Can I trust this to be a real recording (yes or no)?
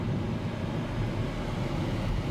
yes